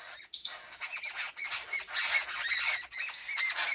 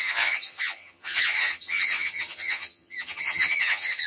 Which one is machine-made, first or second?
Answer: second